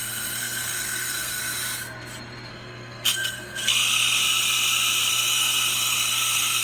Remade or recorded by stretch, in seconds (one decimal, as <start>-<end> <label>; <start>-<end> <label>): 0.0-1.4 remade; 1.4-2.5 recorded; 2.5-4.2 remade; 4.2-5.1 recorded; 5.1-6.6 remade